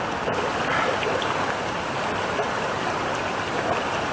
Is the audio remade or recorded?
recorded